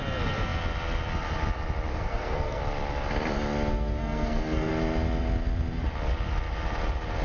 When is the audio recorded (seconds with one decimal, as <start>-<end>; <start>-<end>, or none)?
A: 0.0-1.9; 2.6-3.7; 4.7-7.2